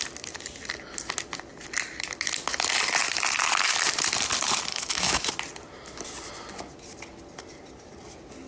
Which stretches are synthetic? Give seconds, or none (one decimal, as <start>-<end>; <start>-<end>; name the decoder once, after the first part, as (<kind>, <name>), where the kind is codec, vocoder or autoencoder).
4.7-5.3 (autoencoder, DAC-VAE)